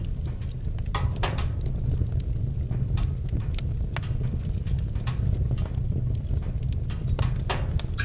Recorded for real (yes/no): yes